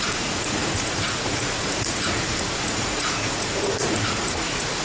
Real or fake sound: fake